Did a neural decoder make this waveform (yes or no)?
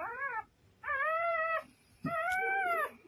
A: yes